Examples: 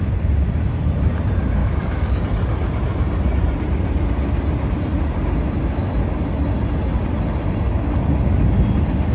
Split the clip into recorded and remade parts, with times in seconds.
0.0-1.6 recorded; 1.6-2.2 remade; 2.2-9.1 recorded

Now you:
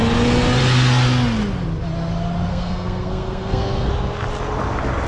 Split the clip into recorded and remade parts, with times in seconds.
0.0-2.5 recorded; 2.5-3.9 remade; 3.9-5.1 recorded

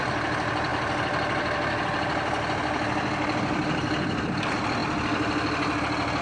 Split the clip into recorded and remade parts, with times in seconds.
0.0-6.2 recorded

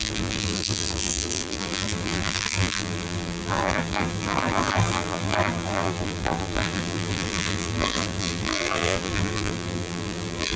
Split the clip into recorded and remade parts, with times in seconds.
0.0-10.6 remade

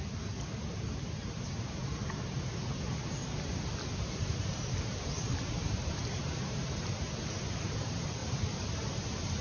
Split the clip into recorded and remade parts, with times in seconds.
0.0-9.4 remade